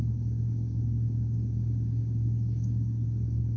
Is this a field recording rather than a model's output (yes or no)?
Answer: no